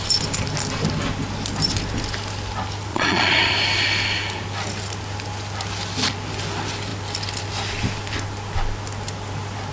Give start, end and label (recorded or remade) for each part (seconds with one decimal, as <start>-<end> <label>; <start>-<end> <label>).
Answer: 0.0-2.9 recorded; 2.9-3.5 remade; 3.5-9.7 recorded